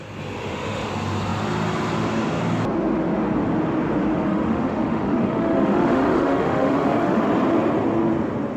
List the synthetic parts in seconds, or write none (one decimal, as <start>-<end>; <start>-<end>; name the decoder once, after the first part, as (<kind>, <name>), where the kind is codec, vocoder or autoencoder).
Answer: 0.4-0.9 (autoencoder, DAC-VAE); 4.3-7.2